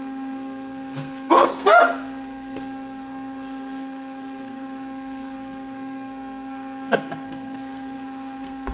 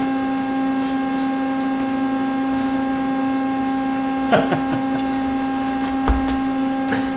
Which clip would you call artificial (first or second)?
first